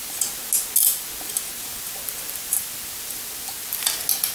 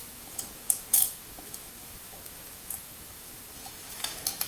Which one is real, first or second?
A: first